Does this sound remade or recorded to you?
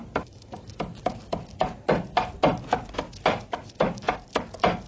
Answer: recorded